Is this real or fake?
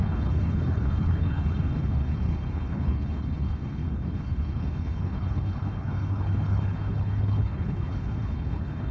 fake